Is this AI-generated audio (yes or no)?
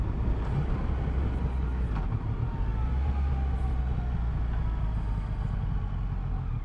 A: no